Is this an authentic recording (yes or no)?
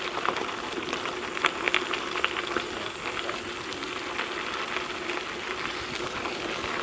yes